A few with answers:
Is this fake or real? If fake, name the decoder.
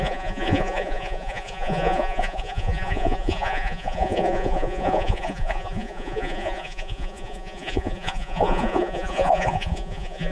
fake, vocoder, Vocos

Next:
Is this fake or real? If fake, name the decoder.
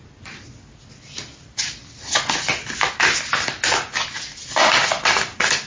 real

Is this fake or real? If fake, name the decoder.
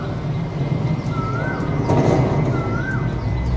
real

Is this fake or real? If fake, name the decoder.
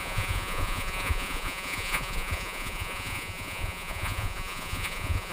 fake, vocoder, Vocos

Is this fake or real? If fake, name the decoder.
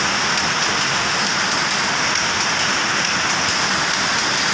real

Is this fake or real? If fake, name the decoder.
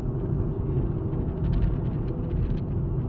real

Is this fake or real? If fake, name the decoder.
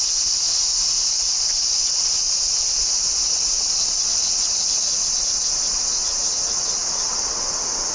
fake, vocoder, Vocos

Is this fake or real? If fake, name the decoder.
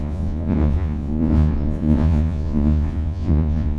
fake, vocoder, Vocos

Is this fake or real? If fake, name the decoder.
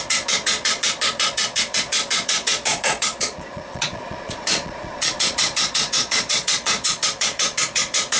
fake, vocoder, Vocos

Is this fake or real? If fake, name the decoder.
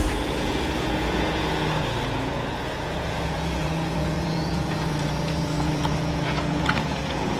fake, vocoder, Vocos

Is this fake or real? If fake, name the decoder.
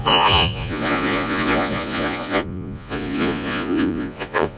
fake, vocoder, Vocos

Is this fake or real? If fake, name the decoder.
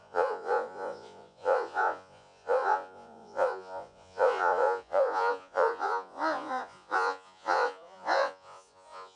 fake, vocoder, Vocos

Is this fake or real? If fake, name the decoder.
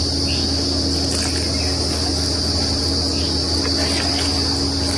real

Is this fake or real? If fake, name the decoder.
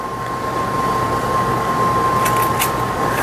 real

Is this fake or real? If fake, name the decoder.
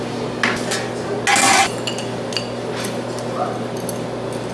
real